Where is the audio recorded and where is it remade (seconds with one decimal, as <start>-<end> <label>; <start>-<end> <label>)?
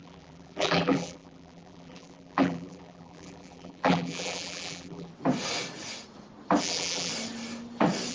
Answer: 0.0-5.1 remade; 5.1-6.6 recorded; 6.6-7.1 remade; 7.1-8.1 recorded